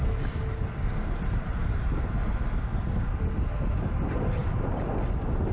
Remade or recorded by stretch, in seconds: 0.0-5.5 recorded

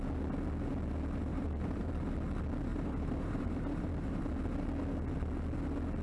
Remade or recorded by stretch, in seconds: 0.0-1.3 recorded; 1.3-1.9 remade; 1.9-2.7 recorded; 2.7-4.2 remade; 4.2-6.0 recorded

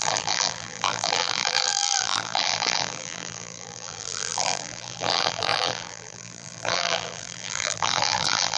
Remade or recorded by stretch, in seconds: 0.0-8.6 remade

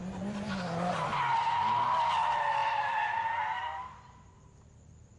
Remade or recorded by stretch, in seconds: 0.0-5.2 recorded